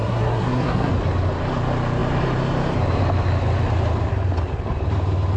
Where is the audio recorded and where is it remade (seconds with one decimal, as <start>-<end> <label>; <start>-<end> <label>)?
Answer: 0.0-0.9 remade; 0.9-5.4 recorded